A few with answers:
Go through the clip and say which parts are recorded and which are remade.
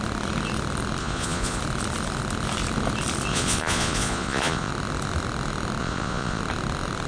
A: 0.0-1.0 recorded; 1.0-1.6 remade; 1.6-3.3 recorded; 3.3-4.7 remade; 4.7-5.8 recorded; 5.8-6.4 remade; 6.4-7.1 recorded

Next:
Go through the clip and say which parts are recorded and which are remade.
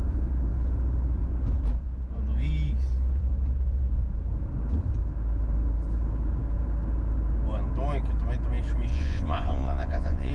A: 0.0-8.9 recorded; 8.9-10.3 remade